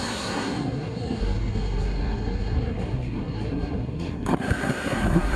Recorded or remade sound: remade